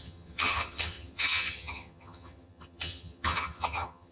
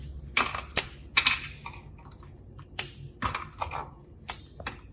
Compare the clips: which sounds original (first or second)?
second